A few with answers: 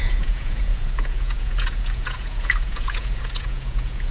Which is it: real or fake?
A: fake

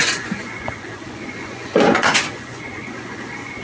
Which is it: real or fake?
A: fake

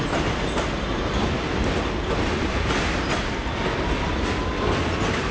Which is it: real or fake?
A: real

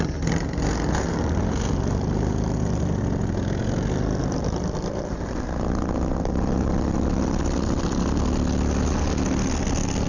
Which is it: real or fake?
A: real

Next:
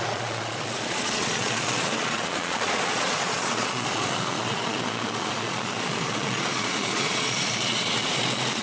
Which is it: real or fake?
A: fake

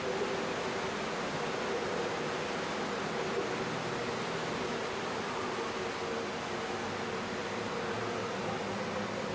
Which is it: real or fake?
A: real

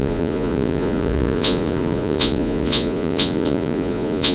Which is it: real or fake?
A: fake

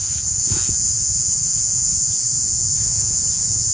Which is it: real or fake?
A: fake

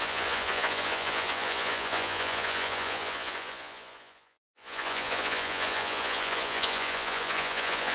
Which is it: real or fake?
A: fake